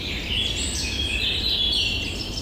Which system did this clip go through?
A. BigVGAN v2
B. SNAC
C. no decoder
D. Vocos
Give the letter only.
C